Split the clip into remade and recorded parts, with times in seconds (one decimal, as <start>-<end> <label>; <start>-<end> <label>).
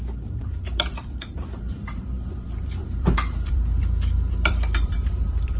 0.0-5.6 remade